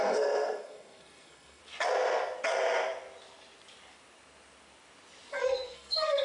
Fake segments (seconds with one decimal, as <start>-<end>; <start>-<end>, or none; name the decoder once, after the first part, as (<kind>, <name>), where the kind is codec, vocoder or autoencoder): 0.0-1.6 (codec, SNAC); 5.3-6.2

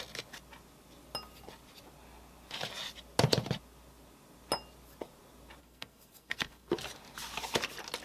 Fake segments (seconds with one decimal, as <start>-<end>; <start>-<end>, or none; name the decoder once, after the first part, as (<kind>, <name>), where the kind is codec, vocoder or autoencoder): 5.6-6.7 (codec, SNAC)

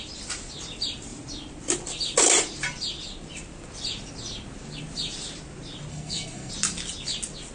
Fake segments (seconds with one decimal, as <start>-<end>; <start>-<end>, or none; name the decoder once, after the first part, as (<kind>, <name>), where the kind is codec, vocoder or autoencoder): 5.9-6.5 (codec, SNAC)

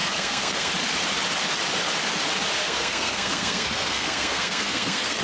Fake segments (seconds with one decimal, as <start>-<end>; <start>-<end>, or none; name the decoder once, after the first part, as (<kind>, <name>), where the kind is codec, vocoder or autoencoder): 0.0-0.7 (codec, SNAC); 2.6-5.2

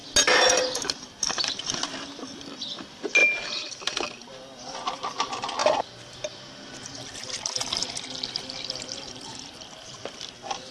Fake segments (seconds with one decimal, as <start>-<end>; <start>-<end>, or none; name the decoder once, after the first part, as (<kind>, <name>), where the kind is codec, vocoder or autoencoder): none

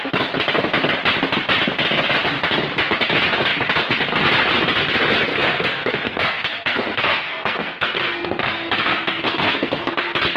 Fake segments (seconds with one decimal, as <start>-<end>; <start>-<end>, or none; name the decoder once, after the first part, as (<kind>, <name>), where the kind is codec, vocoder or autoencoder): 5.3-9.9 (codec, SNAC)

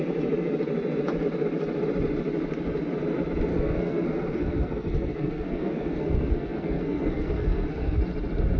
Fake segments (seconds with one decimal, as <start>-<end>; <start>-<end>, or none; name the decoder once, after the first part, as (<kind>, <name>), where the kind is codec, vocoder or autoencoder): 3.5-8.0 (codec, SNAC)